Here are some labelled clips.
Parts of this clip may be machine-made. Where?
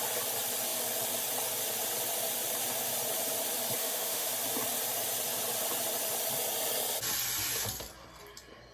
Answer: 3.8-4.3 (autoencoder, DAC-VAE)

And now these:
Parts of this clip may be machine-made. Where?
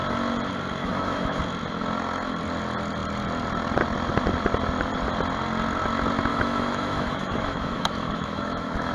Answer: 0.8-1.4 (autoencoder, DAC-VAE); 6.3-8.9